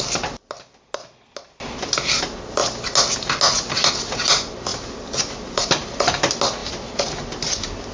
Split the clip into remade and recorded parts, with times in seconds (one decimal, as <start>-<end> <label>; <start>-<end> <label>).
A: 0.0-7.9 recorded